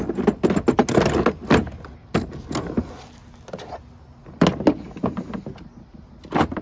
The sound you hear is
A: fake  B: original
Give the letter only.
B